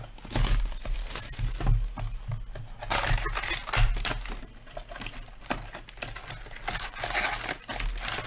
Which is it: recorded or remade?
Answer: recorded